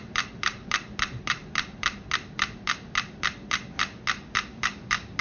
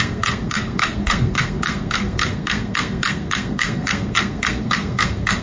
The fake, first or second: second